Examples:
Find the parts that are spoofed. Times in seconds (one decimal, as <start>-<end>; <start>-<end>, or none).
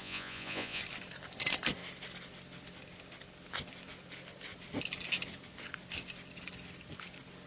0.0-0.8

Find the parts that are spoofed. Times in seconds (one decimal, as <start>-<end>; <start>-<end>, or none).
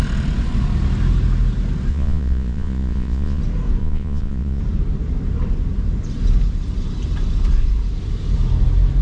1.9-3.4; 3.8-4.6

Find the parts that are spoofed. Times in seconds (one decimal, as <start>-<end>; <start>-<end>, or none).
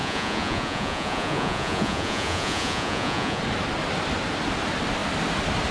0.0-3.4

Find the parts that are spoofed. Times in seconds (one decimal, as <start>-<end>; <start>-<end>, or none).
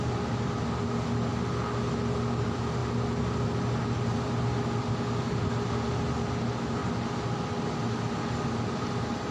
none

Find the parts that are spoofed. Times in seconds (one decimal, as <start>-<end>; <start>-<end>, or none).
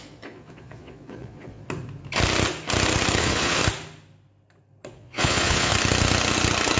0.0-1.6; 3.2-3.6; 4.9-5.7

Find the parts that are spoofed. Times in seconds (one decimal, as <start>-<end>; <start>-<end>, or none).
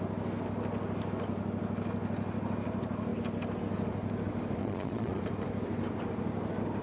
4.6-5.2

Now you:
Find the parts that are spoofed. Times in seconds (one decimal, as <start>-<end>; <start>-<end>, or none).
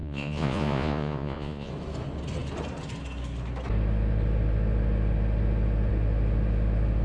0.0-1.7